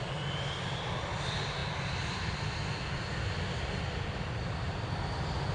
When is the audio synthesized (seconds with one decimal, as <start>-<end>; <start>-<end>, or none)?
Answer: none